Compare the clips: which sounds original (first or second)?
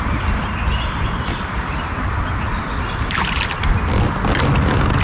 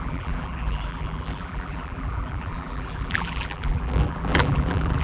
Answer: first